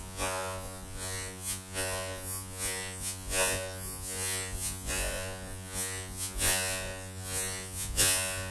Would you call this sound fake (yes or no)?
yes